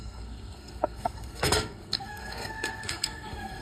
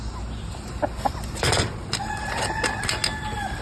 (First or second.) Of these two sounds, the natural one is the second